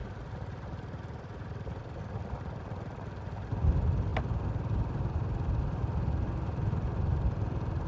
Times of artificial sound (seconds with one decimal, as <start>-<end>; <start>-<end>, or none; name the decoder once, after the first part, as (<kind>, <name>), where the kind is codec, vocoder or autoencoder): none